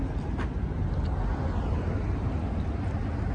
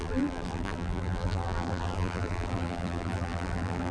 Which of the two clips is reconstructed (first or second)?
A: second